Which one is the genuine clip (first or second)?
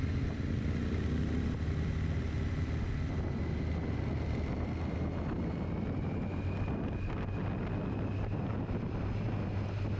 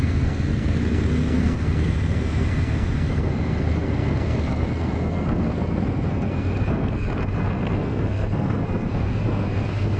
first